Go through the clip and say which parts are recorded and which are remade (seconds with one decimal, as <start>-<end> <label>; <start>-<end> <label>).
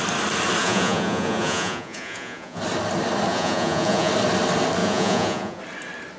0.0-0.6 recorded; 0.6-2.6 remade; 2.6-3.3 recorded; 3.3-4.1 remade; 4.1-4.8 recorded; 4.8-5.6 remade; 5.6-6.2 recorded